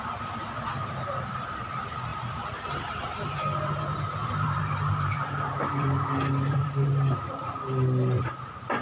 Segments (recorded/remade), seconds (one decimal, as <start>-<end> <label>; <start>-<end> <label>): 0.0-2.1 recorded; 2.1-3.1 remade; 3.1-4.2 recorded; 4.2-6.9 remade; 6.9-8.8 recorded